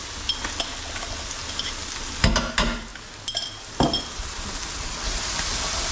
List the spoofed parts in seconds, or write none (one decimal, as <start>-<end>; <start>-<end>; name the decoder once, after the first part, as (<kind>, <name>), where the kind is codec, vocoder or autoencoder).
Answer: none